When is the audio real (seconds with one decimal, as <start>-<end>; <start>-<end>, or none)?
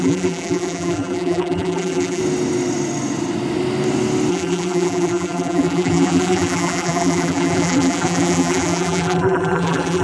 2.2-4.3